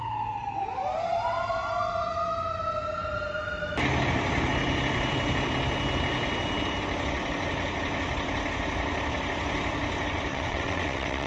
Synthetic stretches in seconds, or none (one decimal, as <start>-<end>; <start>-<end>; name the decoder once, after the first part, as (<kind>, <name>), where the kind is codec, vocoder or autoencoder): 10.3-11.3 (vocoder, WaveNeXt)